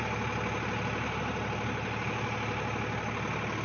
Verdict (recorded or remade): recorded